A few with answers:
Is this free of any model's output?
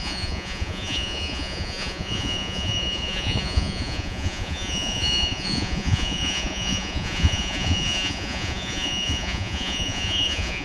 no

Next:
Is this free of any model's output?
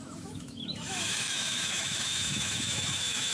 no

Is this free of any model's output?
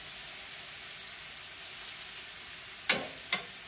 yes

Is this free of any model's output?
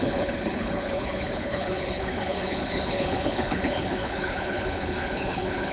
no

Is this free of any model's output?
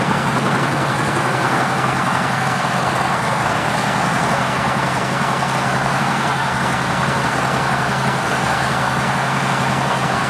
no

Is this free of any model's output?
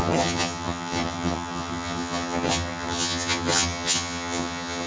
no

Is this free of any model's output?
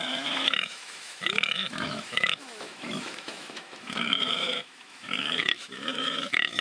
no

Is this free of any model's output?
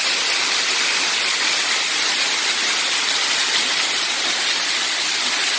yes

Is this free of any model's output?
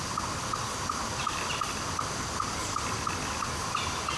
yes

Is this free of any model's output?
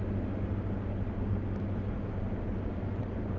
yes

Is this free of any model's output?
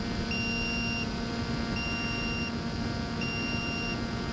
yes